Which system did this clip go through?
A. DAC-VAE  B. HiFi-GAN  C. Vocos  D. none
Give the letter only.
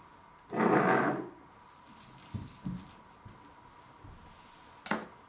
D